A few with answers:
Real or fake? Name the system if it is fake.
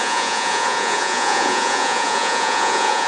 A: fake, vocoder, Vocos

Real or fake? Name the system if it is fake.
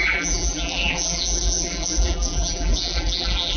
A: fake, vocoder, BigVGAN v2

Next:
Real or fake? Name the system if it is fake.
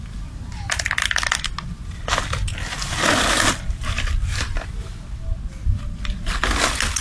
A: real